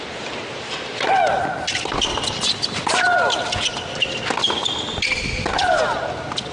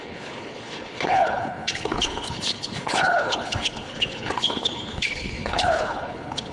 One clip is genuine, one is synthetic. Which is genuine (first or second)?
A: first